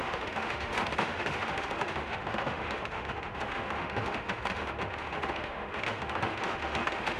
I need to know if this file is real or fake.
fake